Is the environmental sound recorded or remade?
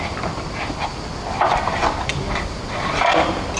recorded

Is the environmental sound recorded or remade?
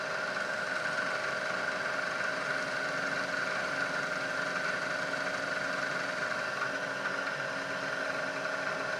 recorded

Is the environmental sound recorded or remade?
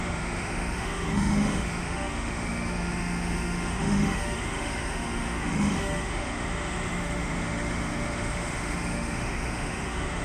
remade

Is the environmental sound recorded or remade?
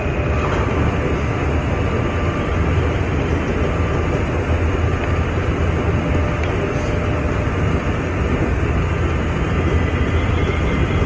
recorded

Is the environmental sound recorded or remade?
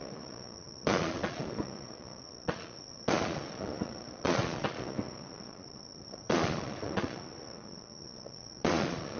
remade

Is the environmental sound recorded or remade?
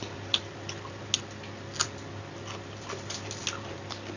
recorded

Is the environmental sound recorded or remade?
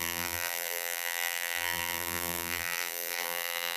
remade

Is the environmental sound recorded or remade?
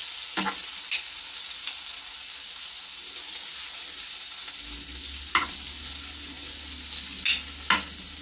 recorded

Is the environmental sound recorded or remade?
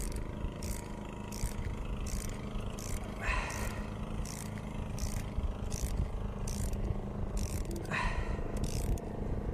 recorded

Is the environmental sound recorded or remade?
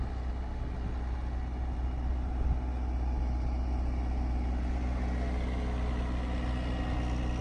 recorded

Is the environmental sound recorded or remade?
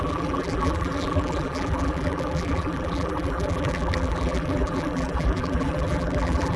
remade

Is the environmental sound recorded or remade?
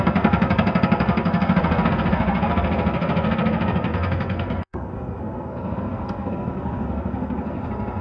remade